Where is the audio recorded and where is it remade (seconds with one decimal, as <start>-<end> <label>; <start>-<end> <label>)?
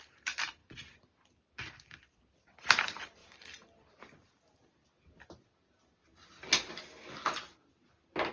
0.0-0.6 remade; 0.6-1.9 recorded; 1.9-3.2 remade; 3.2-6.7 recorded; 6.7-7.2 remade; 7.2-7.7 recorded; 7.7-8.3 remade